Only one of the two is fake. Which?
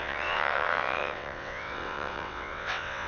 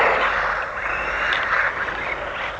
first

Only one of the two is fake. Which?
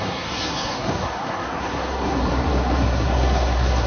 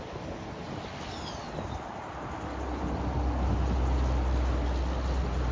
first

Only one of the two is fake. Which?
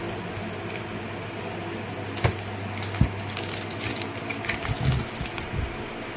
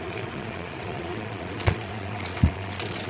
second